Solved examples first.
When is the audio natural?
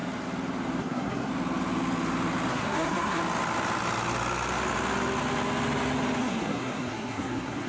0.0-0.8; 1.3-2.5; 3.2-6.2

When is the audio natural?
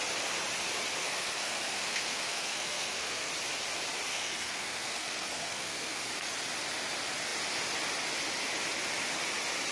0.0-1.0; 3.3-4.1; 6.1-9.7